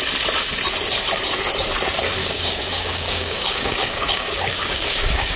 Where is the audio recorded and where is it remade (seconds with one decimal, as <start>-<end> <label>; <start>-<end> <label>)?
0.0-2.2 recorded; 2.2-5.4 remade